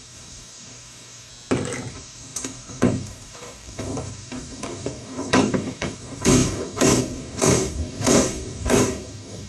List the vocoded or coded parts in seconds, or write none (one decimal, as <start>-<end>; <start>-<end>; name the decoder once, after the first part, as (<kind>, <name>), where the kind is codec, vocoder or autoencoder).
0.0-1.3 (codec, DAC); 1.9-9.5